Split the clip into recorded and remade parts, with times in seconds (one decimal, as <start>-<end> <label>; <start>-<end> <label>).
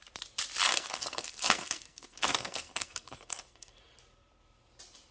0.0-0.7 recorded; 0.7-3.8 remade; 3.8-5.1 recorded